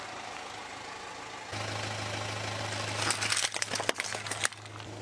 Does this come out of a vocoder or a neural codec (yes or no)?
no